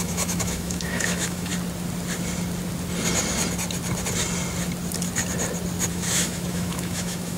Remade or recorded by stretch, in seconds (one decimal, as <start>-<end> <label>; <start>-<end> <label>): 0.0-1.5 remade; 1.5-5.9 recorded; 5.9-7.4 remade